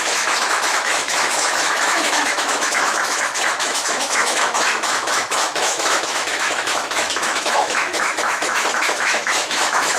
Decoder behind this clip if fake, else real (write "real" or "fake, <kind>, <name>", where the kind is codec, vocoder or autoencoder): fake, autoencoder, DAC-VAE